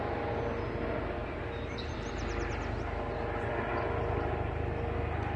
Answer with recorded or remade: recorded